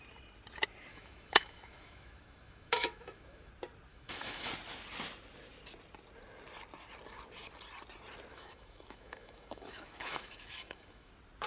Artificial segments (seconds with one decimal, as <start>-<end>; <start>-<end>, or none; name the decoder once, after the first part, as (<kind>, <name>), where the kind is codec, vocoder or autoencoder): 0.9-3.5 (autoencoder, DAC-VAE); 3.9-4.5; 8.3-11.1